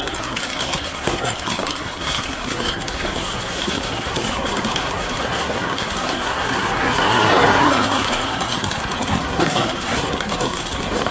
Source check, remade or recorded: remade